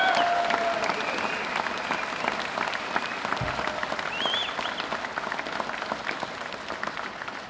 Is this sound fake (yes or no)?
no